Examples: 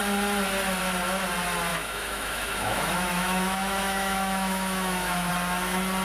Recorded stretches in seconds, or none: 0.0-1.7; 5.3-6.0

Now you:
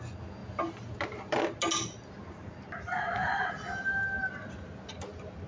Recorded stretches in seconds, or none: 0.0-5.5

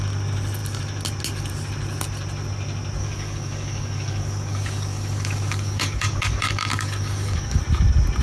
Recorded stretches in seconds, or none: 0.0-3.0; 7.6-8.2

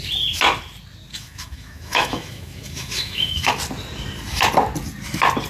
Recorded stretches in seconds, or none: 0.0-1.1; 3.5-5.5

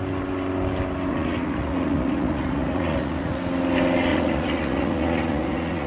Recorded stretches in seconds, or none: 0.0-1.1; 3.4-4.1

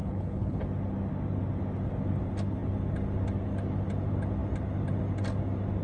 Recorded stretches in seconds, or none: 0.6-5.8

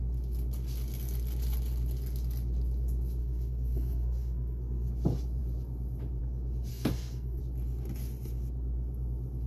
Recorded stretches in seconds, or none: 0.0-3.2; 4.9-6.7; 7.4-9.5

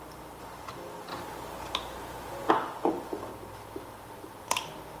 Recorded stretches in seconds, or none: 1.1-2.5